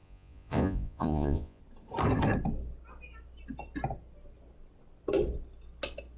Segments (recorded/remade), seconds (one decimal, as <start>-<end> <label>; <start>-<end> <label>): 0.0-1.6 remade; 1.6-6.2 recorded